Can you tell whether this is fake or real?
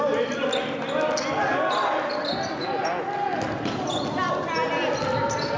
real